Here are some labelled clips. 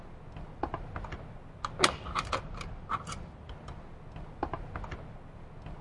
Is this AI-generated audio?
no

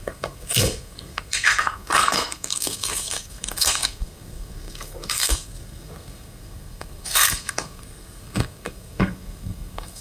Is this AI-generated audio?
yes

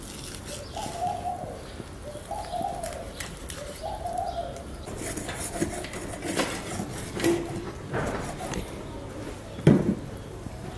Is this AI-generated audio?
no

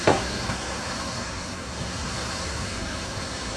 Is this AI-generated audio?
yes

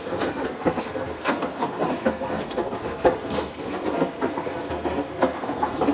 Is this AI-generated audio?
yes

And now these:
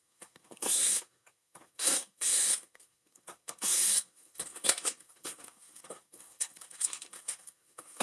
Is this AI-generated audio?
yes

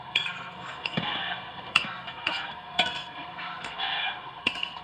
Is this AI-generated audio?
yes